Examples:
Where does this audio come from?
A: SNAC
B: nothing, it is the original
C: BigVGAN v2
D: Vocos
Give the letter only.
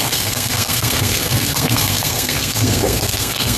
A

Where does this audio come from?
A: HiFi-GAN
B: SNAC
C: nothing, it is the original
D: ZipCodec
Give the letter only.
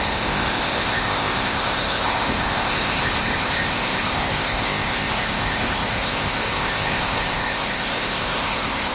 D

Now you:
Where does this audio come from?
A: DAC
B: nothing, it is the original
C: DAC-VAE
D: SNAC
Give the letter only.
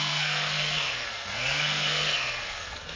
D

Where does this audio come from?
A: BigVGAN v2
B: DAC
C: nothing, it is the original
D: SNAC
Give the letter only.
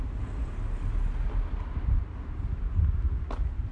C